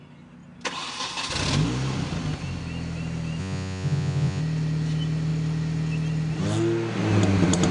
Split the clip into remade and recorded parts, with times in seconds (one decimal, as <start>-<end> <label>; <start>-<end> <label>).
0.0-3.4 recorded; 3.4-4.4 remade; 4.4-7.7 recorded

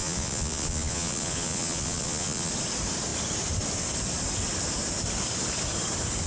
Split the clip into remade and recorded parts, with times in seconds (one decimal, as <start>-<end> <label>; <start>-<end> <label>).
0.0-2.5 remade; 2.5-6.3 recorded